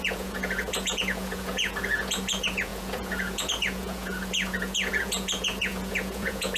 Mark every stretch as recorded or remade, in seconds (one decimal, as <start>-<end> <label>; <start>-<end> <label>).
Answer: 0.0-6.6 remade